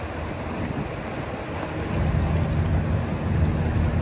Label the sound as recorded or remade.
recorded